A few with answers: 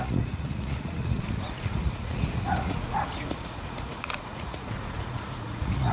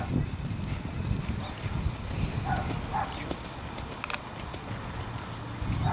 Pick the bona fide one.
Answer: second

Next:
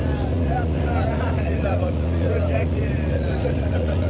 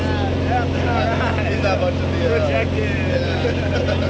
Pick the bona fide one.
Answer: second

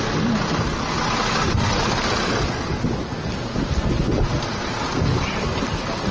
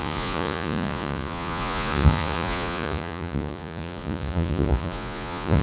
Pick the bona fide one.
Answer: first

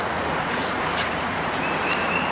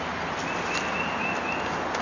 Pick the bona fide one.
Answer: second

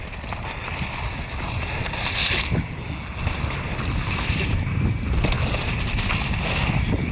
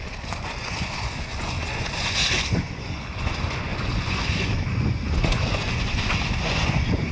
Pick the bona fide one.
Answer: first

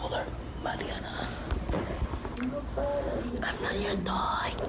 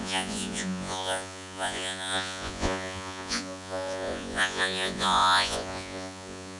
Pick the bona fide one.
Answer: first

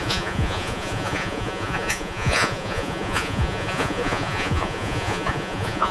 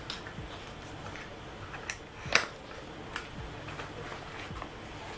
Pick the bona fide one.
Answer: second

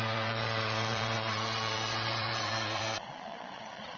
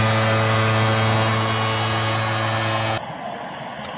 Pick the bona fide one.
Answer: second